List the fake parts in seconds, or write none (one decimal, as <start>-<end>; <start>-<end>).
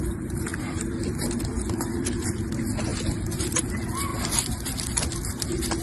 4.1-5.1